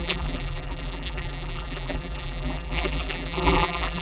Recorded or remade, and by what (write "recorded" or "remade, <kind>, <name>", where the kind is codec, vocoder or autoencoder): remade, vocoder, BigVGAN v2